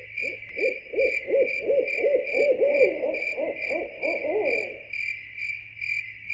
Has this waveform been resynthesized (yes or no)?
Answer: no